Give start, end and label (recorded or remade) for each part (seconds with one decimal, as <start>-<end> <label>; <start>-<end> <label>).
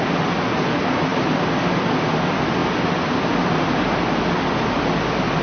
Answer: 0.0-5.4 recorded